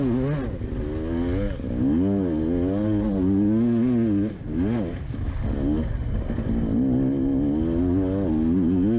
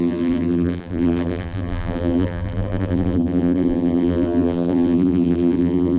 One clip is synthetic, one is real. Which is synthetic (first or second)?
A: second